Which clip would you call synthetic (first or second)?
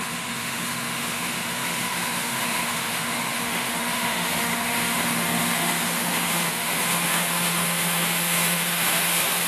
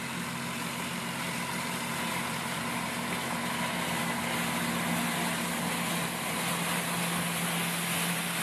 first